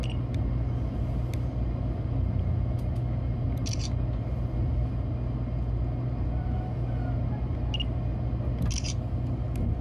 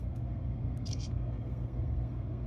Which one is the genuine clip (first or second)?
first